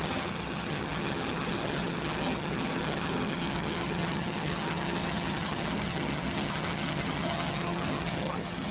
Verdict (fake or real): fake